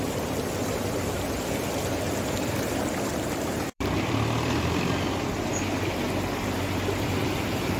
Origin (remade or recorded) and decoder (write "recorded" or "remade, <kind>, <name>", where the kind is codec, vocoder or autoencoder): remade, vocoder, BigVGAN v2